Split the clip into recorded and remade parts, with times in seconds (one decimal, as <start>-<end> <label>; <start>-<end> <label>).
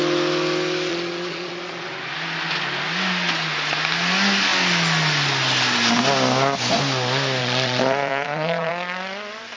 0.0-0.9 recorded; 0.9-1.9 remade; 1.9-7.4 recorded; 7.4-8.7 remade; 8.7-9.6 recorded